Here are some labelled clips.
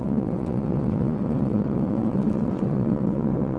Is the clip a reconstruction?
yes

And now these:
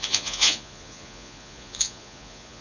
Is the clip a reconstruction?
yes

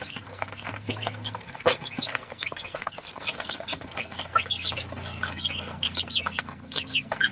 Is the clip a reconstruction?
yes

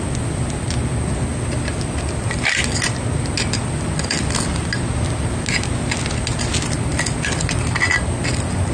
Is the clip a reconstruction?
no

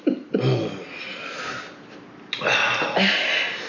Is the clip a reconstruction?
no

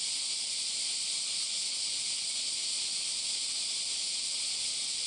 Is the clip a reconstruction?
no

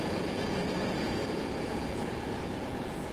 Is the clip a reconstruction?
yes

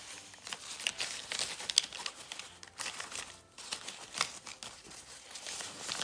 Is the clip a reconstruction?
no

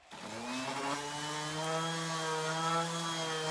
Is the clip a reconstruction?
no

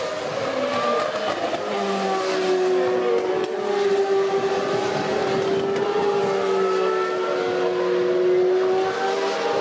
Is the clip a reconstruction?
no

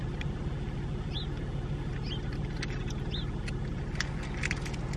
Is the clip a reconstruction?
no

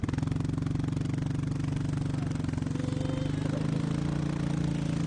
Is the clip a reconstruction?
no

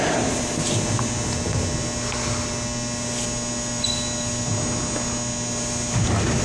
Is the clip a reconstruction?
no